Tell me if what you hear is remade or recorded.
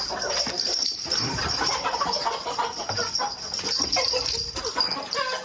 recorded